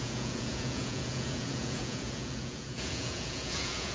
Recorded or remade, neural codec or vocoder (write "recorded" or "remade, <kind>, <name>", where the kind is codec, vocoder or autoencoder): remade, vocoder, Vocos